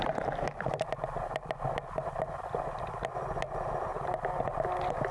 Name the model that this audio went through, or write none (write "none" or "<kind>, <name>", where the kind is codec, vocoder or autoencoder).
none